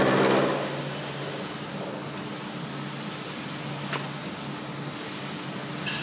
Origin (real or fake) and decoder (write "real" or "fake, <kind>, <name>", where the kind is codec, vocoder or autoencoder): real